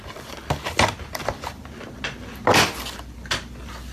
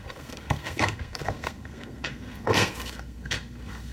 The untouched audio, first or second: first